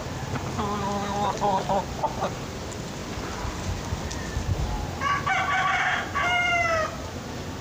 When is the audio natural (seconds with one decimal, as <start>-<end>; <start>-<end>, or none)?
0.0-7.6